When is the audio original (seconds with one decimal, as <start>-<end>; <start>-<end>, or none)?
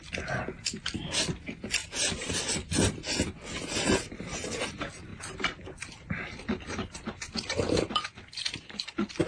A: 0.0-9.3